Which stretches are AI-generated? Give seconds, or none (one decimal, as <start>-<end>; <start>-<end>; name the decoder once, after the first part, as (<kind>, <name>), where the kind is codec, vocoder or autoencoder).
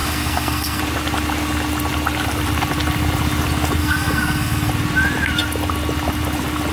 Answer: 0.0-0.8 (codec, SNAC); 3.8-4.7